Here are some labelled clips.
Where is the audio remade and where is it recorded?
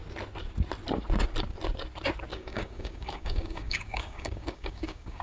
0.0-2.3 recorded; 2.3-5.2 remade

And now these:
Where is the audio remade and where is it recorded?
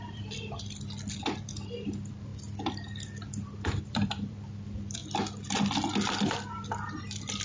0.0-2.3 remade; 2.3-3.8 recorded; 3.8-5.0 remade; 5.0-7.0 recorded; 7.0-7.4 remade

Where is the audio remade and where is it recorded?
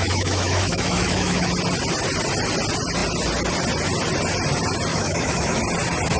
0.0-1.5 remade; 1.5-4.9 recorded; 4.9-5.6 remade; 5.6-6.2 recorded